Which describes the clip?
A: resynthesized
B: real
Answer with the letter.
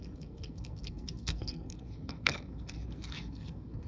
A